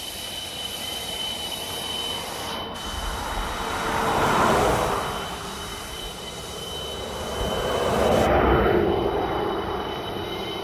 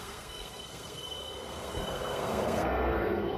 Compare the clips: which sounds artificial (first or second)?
second